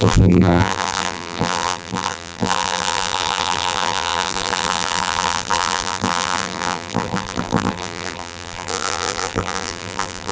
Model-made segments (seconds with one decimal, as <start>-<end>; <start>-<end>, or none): 0.0-10.3